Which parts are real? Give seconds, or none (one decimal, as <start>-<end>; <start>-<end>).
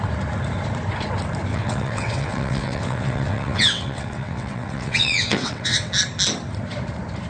0.0-1.5; 5.9-7.3